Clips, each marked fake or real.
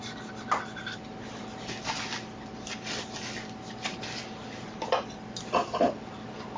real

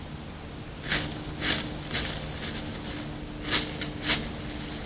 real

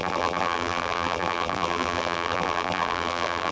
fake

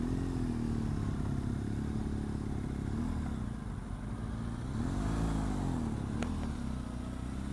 real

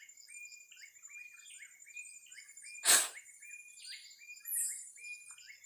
real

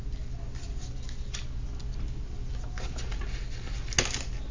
real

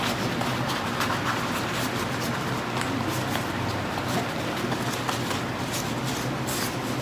real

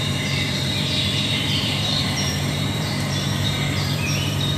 fake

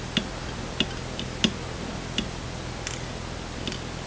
real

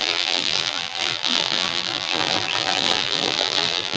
fake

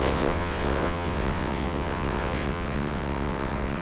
fake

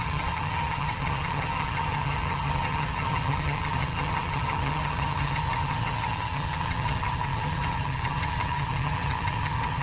fake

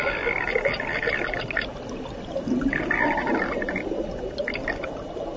real